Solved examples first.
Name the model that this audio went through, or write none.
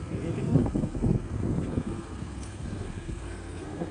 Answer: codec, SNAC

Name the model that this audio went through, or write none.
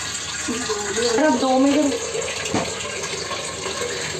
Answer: none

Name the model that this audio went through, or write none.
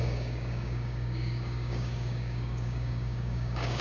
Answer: codec, DAC